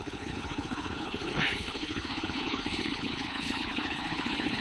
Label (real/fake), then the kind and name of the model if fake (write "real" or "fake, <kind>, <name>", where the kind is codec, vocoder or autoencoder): fake, codec, HILCodec